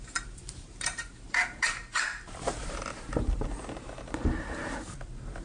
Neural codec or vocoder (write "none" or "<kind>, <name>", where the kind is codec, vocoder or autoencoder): vocoder, BigVGAN v2